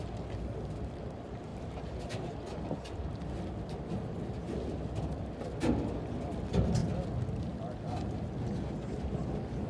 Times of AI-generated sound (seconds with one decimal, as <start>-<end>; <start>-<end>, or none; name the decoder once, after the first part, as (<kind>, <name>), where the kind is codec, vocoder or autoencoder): 1.5-2.3 (vocoder, BigVGAN v2)